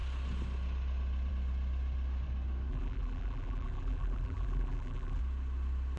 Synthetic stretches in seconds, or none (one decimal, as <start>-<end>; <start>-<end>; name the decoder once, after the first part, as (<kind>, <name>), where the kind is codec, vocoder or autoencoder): 2.7-5.2 (vocoder, BigVGAN v2)